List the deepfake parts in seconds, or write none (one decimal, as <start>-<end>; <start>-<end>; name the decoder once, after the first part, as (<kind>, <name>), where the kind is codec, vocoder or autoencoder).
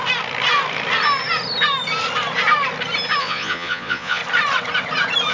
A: 3.2-4.2 (vocoder, Vocos)